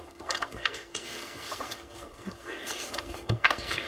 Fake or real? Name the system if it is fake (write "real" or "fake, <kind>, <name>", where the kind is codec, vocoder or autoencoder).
fake, codec, SNAC